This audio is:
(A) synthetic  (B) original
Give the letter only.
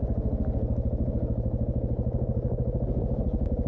B